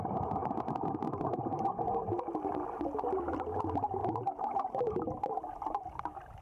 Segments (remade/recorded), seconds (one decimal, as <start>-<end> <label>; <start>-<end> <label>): 0.0-4.0 recorded; 4.0-6.0 remade; 6.0-6.4 recorded